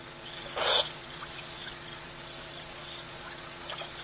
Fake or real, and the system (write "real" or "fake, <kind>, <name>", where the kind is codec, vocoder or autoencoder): fake, vocoder, Vocos